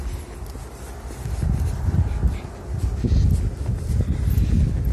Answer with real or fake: real